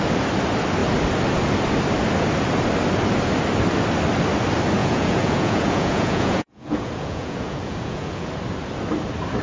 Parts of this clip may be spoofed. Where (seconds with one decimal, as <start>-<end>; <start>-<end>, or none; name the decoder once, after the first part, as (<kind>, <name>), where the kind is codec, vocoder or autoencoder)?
4.8-8.3 (vocoder, Vocos)